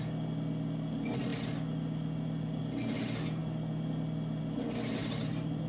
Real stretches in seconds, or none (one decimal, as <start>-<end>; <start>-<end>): 0.0-5.7